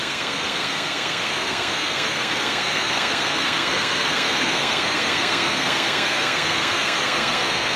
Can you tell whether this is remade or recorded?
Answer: remade